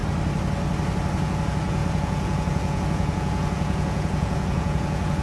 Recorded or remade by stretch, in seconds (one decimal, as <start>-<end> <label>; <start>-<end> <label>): 0.0-1.2 recorded; 1.2-5.2 remade